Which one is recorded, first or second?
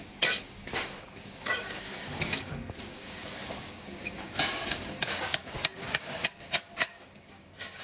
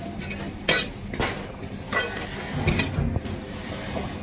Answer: second